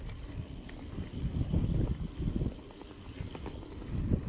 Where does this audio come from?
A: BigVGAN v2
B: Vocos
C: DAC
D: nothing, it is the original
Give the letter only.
D